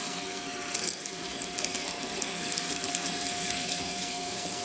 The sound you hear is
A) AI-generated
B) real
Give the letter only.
A